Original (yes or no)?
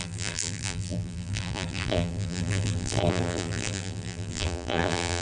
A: no